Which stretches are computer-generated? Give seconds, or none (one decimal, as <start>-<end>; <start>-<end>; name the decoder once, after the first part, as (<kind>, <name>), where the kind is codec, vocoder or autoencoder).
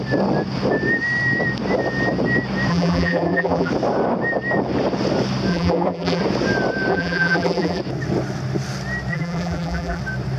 2.7-3.7 (vocoder, BigVGAN v2); 5.5-6.2; 6.9-7.8; 9.1-10.0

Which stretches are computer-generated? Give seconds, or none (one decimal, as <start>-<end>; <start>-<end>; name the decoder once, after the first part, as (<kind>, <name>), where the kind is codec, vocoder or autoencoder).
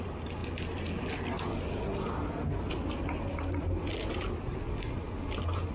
none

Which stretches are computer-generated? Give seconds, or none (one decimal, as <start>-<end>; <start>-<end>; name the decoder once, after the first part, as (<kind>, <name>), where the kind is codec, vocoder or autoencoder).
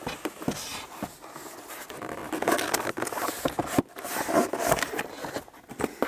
none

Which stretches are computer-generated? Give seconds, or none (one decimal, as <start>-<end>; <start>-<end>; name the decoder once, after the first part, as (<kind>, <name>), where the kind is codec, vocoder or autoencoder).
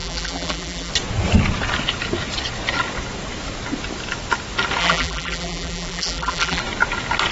0.0-0.9 (vocoder, BigVGAN v2); 4.8-6.6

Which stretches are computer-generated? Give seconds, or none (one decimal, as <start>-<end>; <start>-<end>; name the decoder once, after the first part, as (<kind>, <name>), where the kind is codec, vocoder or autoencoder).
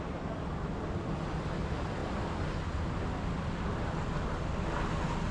none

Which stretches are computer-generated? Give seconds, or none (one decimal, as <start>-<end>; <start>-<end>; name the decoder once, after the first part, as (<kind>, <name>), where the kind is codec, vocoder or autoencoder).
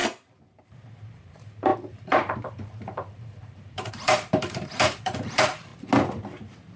0.6-5.7 (vocoder, BigVGAN v2)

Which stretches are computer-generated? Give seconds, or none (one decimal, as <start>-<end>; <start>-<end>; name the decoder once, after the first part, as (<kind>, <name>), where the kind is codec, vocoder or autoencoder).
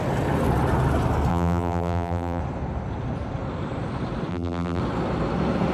1.3-2.4 (vocoder, BigVGAN v2); 4.3-4.8